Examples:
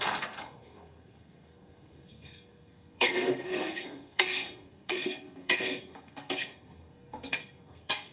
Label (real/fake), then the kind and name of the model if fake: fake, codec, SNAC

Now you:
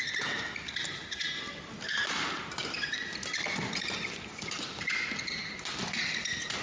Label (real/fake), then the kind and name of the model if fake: real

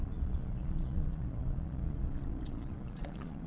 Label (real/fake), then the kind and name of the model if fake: fake, vocoder, Vocos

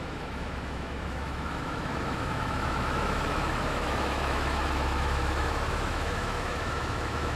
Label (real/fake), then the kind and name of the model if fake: fake, autoencoder, DAC-VAE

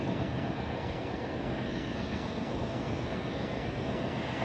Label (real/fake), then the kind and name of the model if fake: fake, codec, SNAC